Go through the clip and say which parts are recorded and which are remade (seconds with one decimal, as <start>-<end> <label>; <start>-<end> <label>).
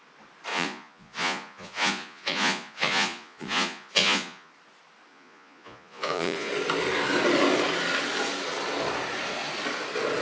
0.0-0.5 recorded; 0.5-4.5 remade; 4.5-5.1 recorded; 5.1-6.5 remade; 6.5-10.2 recorded